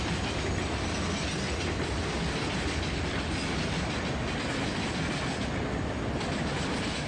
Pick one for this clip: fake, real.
real